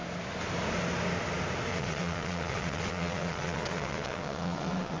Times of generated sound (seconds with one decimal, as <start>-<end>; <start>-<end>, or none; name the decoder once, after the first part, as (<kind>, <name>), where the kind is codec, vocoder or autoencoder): 1.7-5.0 (vocoder, WaveNeXt)